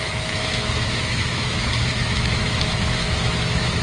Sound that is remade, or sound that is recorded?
remade